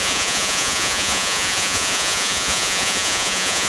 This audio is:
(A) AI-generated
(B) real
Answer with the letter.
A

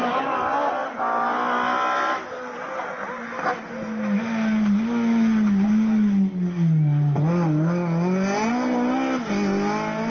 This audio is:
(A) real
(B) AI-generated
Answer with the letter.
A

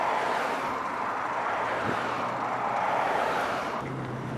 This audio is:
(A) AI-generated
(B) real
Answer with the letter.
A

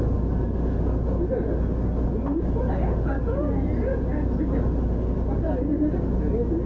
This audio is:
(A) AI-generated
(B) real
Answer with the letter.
B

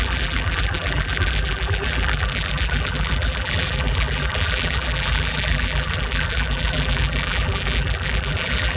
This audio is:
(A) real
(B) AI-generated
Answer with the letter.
B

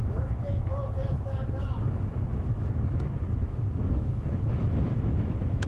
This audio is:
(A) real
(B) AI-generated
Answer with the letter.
B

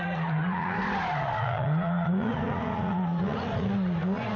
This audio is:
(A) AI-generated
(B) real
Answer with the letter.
A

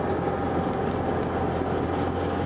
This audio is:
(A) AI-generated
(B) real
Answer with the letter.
B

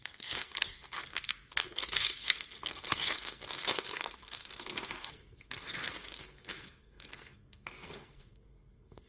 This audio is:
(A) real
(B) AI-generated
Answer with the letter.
B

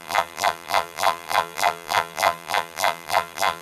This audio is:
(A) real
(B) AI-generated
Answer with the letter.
B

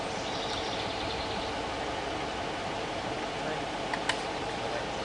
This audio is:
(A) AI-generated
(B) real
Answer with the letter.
B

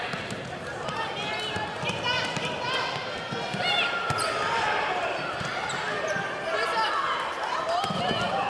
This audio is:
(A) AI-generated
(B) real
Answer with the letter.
B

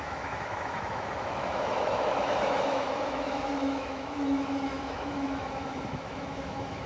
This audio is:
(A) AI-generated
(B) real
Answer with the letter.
A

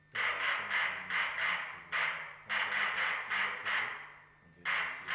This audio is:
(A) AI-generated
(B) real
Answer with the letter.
B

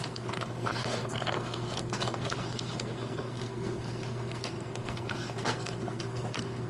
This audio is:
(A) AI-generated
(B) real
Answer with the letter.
A